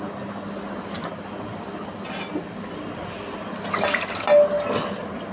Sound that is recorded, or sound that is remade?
recorded